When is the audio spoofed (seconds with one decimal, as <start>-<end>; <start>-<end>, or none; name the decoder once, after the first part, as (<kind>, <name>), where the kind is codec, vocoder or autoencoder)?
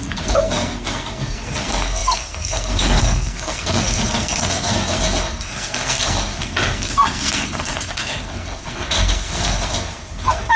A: 0.0-10.6 (codec, SNAC)